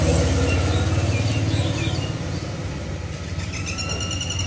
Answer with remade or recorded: recorded